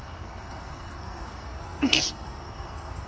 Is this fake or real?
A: fake